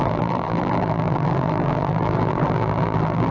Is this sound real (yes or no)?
no